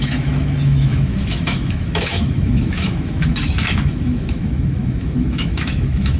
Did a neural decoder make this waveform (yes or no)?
yes